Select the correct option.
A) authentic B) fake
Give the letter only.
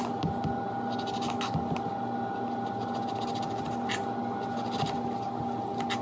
A